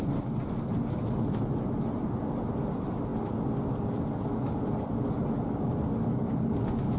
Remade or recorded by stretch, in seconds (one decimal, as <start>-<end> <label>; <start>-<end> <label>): 0.0-7.0 recorded

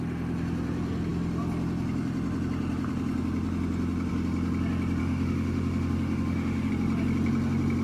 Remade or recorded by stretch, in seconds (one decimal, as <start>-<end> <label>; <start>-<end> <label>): 0.0-5.0 recorded; 5.0-6.7 remade; 6.7-7.8 recorded

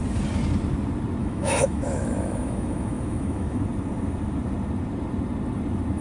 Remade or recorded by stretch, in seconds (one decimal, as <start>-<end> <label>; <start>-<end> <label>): 0.0-1.2 recorded; 1.2-3.6 remade; 3.6-6.0 recorded

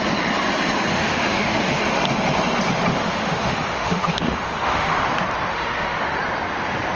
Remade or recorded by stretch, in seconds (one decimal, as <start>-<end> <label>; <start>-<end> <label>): 0.0-0.9 recorded; 0.9-1.8 remade; 1.8-2.9 recorded; 2.9-5.0 remade; 5.0-5.5 recorded; 5.5-6.2 remade; 6.2-7.0 recorded

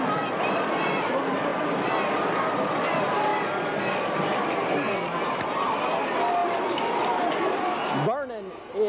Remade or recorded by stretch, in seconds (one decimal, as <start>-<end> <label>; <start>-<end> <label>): 0.0-8.9 recorded

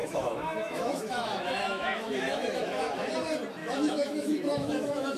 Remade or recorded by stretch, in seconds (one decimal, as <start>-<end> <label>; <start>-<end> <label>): 0.0-3.1 remade; 3.1-3.6 recorded; 3.6-5.2 remade

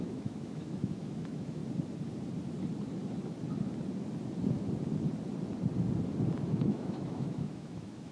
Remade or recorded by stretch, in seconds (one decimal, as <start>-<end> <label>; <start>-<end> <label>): 0.0-1.6 remade; 1.6-6.5 recorded; 6.5-8.1 remade